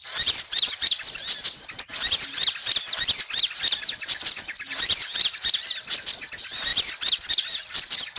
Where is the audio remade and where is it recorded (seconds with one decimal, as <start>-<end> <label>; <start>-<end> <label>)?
0.0-1.9 remade; 1.9-3.1 recorded; 3.1-6.7 remade; 6.7-7.3 recorded; 7.3-8.2 remade